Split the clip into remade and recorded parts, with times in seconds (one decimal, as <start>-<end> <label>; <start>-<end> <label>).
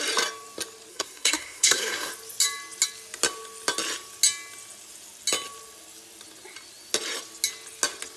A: 0.0-0.9 recorded; 0.9-2.1 remade; 2.1-8.2 recorded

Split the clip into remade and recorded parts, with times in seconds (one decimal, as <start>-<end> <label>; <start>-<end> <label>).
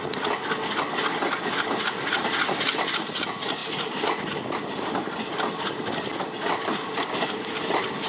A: 0.0-8.1 recorded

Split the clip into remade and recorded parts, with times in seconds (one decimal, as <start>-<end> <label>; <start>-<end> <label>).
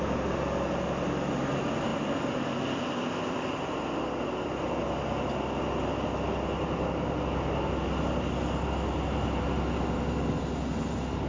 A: 0.0-11.3 recorded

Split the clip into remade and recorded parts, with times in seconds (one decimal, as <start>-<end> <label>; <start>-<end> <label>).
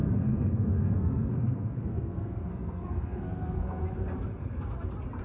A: 0.0-3.8 remade; 3.8-5.2 recorded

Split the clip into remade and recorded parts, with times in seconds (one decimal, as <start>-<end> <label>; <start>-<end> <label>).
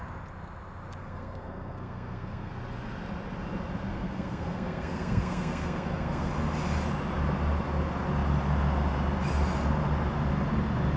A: 0.0-1.0 recorded; 1.0-2.5 remade; 2.5-3.9 recorded; 3.9-6.3 remade; 6.3-11.0 recorded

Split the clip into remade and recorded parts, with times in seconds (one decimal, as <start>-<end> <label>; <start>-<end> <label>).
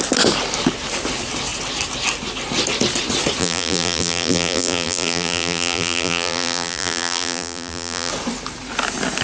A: 0.0-3.4 recorded; 3.4-8.1 remade; 8.1-9.2 recorded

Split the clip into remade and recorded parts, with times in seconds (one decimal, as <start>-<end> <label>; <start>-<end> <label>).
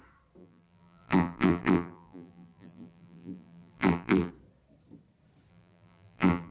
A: 0.0-0.4 recorded; 0.4-4.3 remade; 4.3-5.5 recorded; 5.5-6.5 remade